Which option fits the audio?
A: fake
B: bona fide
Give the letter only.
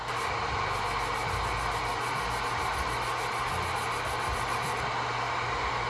B